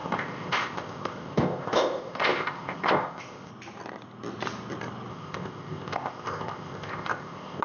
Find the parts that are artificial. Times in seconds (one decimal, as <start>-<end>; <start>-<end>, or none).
0.0-3.5; 5.1-7.6